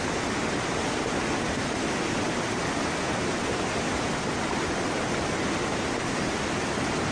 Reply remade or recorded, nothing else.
recorded